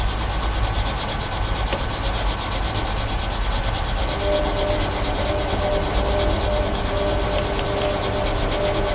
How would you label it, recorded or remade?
recorded